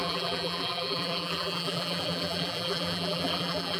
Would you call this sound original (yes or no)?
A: no